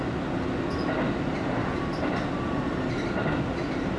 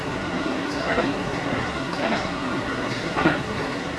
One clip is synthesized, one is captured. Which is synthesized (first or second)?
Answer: second